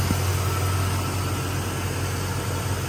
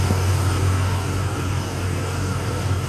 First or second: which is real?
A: first